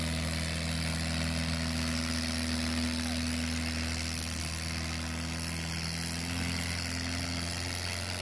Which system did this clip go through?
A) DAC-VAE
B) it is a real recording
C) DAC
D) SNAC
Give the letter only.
B